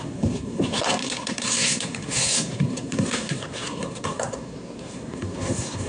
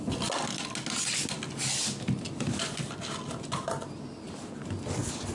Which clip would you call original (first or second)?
second